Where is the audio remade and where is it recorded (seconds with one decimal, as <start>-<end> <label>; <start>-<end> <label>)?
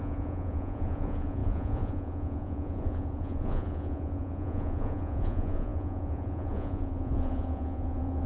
0.0-8.3 remade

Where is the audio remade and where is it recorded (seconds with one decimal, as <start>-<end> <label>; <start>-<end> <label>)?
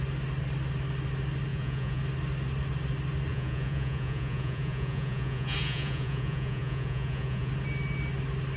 0.0-1.5 recorded; 1.5-2.0 remade; 2.0-3.3 recorded; 3.3-7.5 remade; 7.5-8.6 recorded